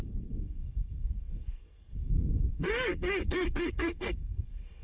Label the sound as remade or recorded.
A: remade